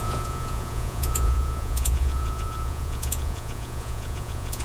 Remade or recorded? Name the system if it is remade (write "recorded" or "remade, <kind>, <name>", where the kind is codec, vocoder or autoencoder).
remade, vocoder, Vocos